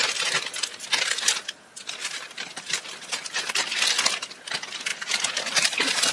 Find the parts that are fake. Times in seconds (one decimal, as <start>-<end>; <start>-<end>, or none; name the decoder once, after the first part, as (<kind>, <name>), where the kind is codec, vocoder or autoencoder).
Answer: 2.0-3.6 (vocoder, BigVGAN v2); 4.9-6.1